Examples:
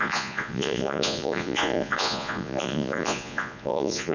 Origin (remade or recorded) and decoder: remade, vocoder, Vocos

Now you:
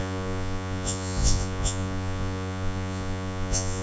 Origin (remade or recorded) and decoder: remade, vocoder, Vocos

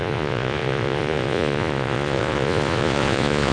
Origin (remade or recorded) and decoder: remade, vocoder, Vocos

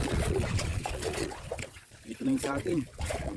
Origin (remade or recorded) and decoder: remade, vocoder, Vocos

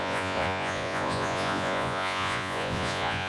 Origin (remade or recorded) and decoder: remade, vocoder, Vocos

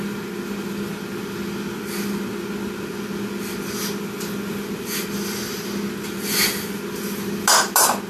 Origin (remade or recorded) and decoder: recorded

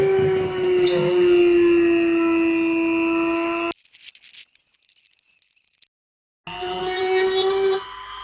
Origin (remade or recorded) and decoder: recorded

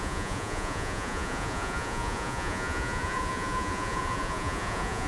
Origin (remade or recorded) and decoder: remade, vocoder, Vocos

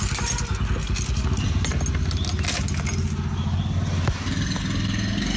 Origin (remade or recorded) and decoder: recorded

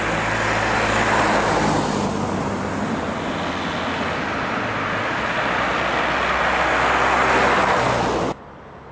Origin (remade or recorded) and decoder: recorded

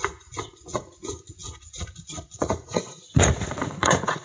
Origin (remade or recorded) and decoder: remade, vocoder, Vocos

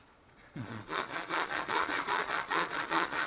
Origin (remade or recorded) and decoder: remade, vocoder, Vocos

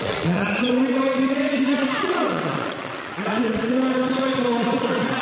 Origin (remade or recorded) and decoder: remade, vocoder, Vocos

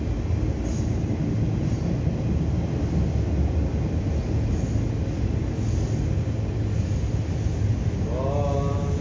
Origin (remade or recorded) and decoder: recorded